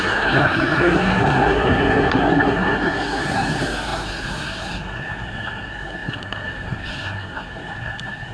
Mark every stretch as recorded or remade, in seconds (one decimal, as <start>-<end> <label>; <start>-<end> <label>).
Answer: 0.0-8.3 remade